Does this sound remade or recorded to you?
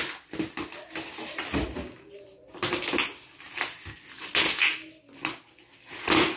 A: recorded